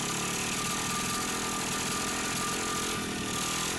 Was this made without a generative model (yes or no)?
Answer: yes